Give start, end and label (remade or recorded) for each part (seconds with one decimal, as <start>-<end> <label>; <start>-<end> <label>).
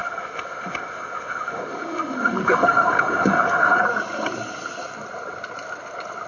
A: 0.0-3.8 remade; 3.8-6.3 recorded